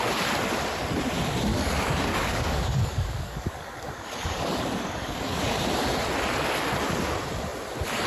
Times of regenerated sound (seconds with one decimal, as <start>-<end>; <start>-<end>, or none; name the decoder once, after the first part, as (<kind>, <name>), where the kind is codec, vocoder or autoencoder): 1.5-5.7 (codec, DAC)

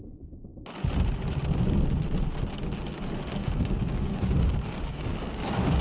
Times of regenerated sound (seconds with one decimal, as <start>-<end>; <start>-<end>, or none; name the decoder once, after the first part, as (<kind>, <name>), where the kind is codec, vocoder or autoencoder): 3.4-5.8 (codec, DAC)

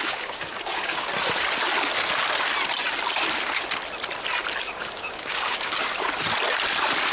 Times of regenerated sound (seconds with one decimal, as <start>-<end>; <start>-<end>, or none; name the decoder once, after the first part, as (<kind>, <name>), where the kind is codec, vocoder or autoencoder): 0.0-1.1 (codec, DAC); 4.6-5.8

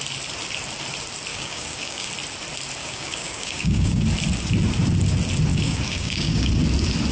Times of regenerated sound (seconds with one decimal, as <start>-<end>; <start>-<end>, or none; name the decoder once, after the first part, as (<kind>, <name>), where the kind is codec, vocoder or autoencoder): 1.3-2.1 (codec, DAC); 2.8-4.0; 5.5-6.5

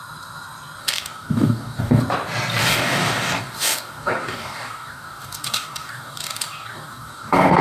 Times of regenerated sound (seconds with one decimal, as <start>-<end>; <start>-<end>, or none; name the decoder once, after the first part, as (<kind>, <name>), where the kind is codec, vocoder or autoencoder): 0.8-2.0 (codec, DAC); 2.6-7.6

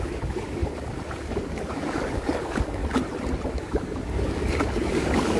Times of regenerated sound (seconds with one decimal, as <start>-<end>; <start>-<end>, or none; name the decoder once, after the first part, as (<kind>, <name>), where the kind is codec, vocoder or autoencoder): 0.0-2.8 (codec, DAC); 3.5-5.4

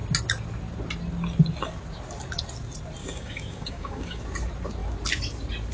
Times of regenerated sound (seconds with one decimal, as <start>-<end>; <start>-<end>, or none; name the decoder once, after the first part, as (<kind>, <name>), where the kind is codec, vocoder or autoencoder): 3.0-4.2 (codec, DAC)